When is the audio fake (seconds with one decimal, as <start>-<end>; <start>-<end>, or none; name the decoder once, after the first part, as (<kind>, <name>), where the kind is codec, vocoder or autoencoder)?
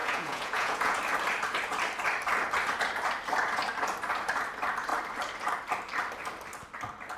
0.0-1.0 (vocoder, Vocos)